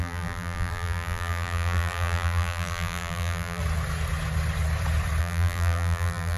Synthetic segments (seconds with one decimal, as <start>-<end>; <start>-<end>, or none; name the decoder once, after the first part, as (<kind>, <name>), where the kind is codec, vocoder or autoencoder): 0.0-3.6 (vocoder, BigVGAN v2); 5.2-6.4